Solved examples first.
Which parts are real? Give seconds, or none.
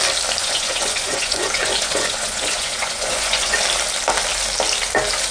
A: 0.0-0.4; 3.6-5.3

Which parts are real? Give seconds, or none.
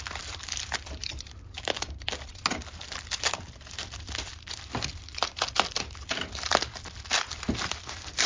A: 0.0-8.3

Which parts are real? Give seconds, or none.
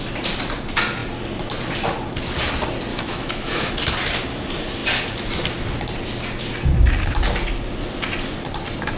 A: 0.0-2.9; 3.7-9.0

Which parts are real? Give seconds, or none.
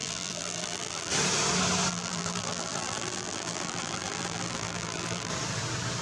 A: 1.1-1.9; 5.3-6.0